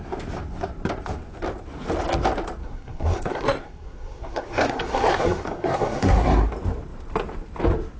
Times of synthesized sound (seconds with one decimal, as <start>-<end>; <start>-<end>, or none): 2.6-6.5